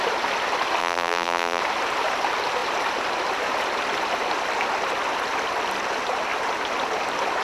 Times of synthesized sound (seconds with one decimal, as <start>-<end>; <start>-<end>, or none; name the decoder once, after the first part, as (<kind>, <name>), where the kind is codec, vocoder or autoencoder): 0.8-1.6 (vocoder, BigVGAN v2)